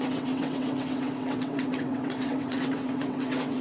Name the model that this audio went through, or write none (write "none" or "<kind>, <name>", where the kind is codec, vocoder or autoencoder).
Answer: vocoder, WaveNeXt